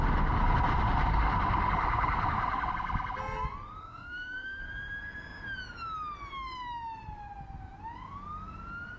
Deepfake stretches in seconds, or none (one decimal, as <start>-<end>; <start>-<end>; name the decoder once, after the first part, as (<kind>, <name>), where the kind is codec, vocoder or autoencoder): 0.7-2.7 (autoencoder, DAC-VAE); 3.8-4.6